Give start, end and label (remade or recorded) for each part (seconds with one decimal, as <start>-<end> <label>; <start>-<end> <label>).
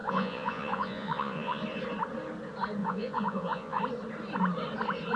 0.0-1.6 remade; 1.6-2.8 recorded; 2.8-3.8 remade; 3.8-5.2 recorded